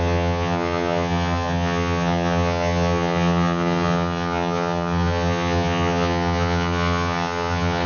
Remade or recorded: remade